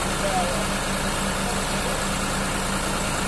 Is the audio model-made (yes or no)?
no